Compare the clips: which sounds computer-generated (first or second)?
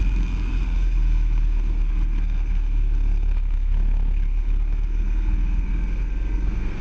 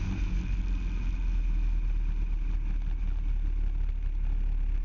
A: first